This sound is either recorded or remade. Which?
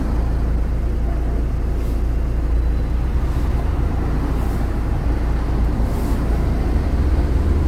recorded